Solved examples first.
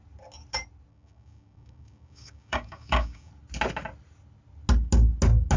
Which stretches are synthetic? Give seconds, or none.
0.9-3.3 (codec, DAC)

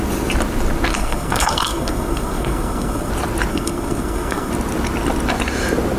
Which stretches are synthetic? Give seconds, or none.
0.9-3.1 (codec, SNAC); 3.5-4.5